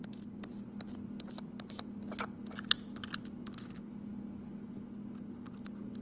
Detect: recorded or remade recorded